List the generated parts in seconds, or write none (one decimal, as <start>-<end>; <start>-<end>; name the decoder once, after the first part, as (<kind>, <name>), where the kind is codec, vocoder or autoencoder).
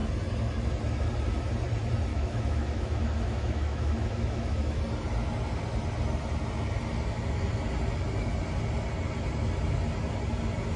2.1-4.8 (autoencoder, DAC-VAE)